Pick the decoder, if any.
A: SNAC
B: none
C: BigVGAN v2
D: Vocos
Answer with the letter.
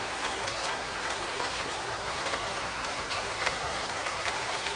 A